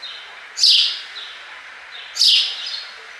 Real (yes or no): yes